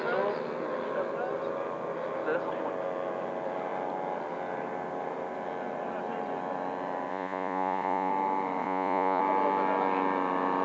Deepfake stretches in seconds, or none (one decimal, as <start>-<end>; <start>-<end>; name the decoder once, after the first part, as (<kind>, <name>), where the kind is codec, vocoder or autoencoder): 7.1-8.1 (vocoder, Vocos); 8.6-9.2